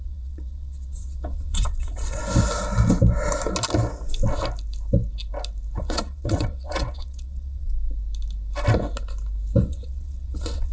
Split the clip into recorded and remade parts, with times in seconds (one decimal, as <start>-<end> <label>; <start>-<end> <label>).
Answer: 0.0-2.2 remade; 2.2-5.8 recorded; 5.8-7.7 remade; 7.7-9.6 recorded; 9.6-10.7 remade